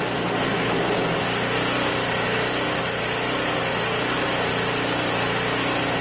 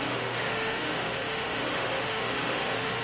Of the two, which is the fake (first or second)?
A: second